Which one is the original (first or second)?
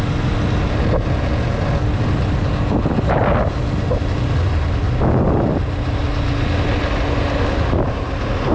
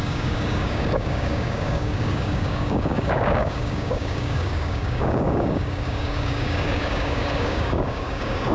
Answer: first